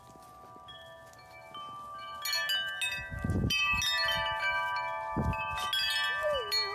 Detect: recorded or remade recorded